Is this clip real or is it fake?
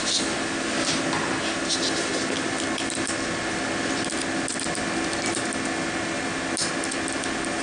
real